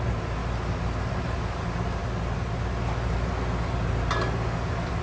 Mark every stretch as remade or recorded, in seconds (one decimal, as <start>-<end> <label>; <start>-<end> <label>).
0.0-0.4 remade; 0.4-1.1 recorded; 1.1-2.0 remade; 2.0-5.0 recorded